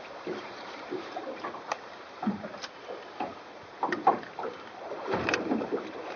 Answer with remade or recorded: remade